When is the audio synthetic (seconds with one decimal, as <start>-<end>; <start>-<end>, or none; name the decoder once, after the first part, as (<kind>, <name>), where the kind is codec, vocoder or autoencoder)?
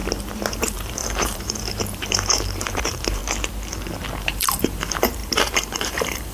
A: 0.5-3.2 (vocoder, BigVGAN v2); 4.2-6.3